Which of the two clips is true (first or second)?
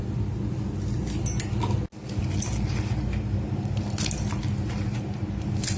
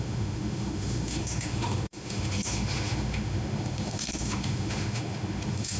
first